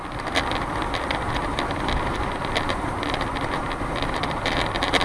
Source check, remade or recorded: remade